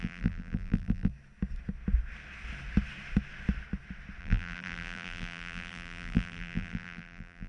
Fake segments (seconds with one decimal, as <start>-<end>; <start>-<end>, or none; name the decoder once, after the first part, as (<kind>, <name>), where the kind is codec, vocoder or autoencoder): 0.0-1.1 (vocoder, BigVGAN v2); 4.2-7.5